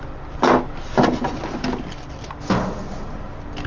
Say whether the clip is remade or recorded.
recorded